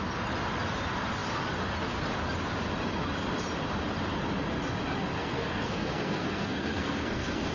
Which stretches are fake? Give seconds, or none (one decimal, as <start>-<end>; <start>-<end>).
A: 5.1-7.5